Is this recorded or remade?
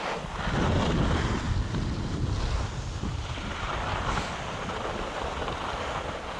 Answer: recorded